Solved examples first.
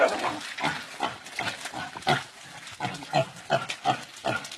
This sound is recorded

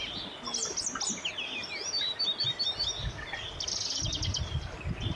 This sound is recorded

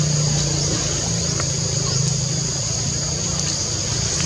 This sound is recorded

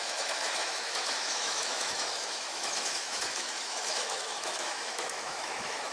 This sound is remade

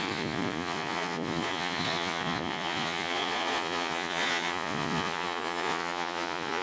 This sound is remade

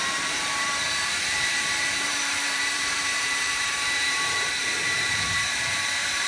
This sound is remade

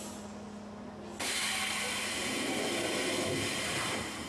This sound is recorded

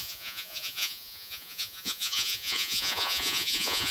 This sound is remade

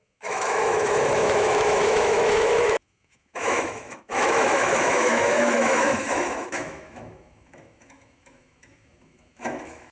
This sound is remade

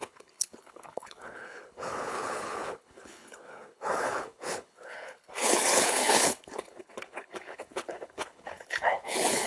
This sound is remade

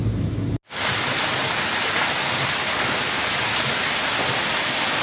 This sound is recorded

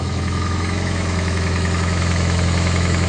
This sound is remade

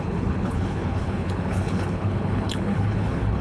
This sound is remade